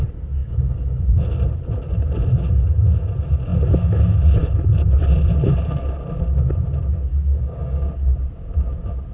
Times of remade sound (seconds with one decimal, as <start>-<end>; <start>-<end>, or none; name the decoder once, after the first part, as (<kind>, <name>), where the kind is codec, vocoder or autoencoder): 0.4-1.2 (codec, DAC); 7.1-7.9